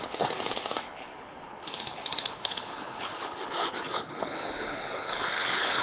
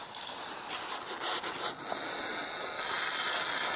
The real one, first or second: second